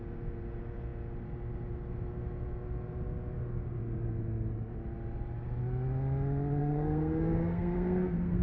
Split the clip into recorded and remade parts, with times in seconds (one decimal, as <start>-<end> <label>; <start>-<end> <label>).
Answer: 0.0-6.6 recorded; 6.6-8.4 remade